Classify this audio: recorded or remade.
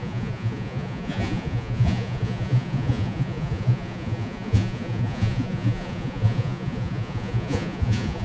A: remade